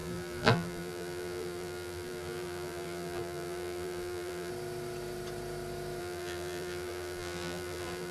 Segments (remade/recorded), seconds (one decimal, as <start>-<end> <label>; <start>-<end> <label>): 0.0-4.5 remade; 4.5-6.0 recorded; 6.0-8.1 remade

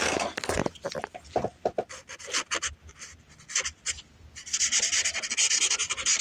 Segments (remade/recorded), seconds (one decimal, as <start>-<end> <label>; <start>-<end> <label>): 0.0-0.6 recorded; 0.6-2.7 remade; 2.7-6.2 recorded

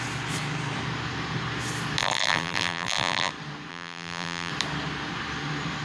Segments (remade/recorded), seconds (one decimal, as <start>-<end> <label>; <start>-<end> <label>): 0.0-2.0 recorded; 2.0-3.3 remade; 3.3-3.7 recorded; 3.7-4.5 remade; 4.5-5.8 recorded

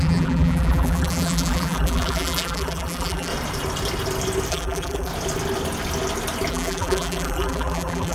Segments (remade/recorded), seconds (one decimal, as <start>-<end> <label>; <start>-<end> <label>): 0.0-3.3 remade; 3.3-4.5 recorded; 4.5-5.1 remade; 5.1-6.5 recorded; 6.5-8.1 remade

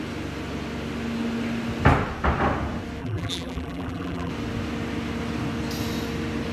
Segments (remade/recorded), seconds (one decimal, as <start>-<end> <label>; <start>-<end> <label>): 0.0-3.0 recorded; 3.0-4.3 remade; 4.3-6.5 recorded